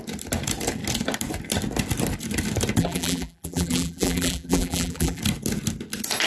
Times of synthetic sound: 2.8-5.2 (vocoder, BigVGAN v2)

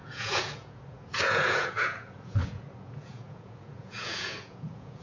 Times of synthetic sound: 0.0-5.0 (vocoder, Vocos)

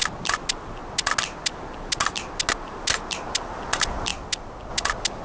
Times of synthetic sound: none

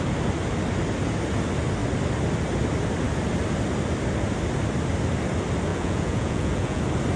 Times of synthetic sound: 5.7-6.8 (vocoder, Vocos)

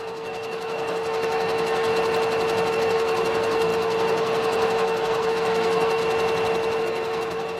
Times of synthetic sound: 0.0-1.9 (codec, SNAC); 2.7-6.0; 6.8-7.6